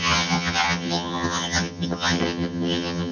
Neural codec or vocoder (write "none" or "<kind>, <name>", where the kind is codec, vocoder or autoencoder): vocoder, HiFi-GAN